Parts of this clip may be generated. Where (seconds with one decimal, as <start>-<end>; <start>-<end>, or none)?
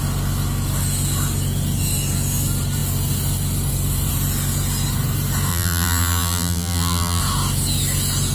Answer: 5.5-7.2